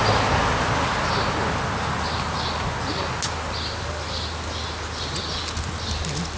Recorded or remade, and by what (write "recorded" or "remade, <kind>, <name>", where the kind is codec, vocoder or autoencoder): recorded